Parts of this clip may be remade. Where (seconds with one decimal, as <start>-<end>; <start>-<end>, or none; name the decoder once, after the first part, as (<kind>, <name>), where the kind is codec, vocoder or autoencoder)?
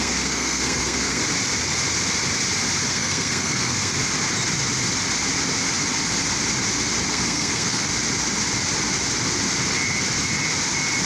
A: 0.0-1.2 (codec, SNAC); 2.9-4.0; 7.1-7.9